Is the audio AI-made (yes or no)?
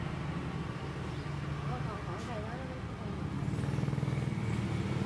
no